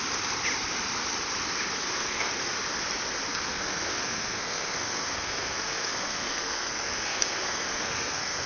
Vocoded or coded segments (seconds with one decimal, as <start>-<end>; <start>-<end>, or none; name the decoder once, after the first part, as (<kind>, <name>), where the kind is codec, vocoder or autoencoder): 1.8-2.3 (codec, SNAC); 3.3-8.5